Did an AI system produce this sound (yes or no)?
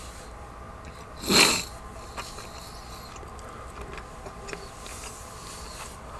no